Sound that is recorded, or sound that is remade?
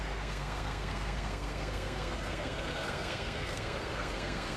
remade